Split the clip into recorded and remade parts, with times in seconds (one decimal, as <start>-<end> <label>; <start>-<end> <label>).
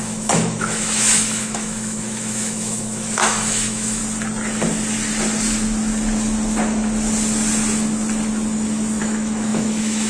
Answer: 0.0-4.0 remade; 4.0-9.0 recorded; 9.0-10.1 remade